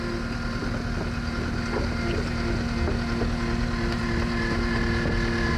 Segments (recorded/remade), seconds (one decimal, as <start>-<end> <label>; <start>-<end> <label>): 0.0-5.6 recorded

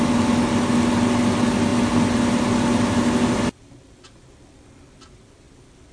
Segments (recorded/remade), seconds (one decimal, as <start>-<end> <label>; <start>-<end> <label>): 0.0-5.9 recorded

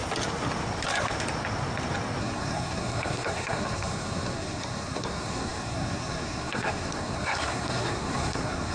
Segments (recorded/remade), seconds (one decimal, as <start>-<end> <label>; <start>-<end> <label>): 0.0-2.2 recorded; 2.2-8.7 remade

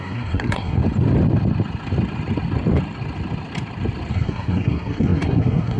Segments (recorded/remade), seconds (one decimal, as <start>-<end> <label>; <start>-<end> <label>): 0.0-0.8 remade; 0.8-4.1 recorded; 4.1-5.8 remade